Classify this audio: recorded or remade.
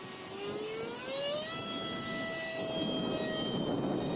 recorded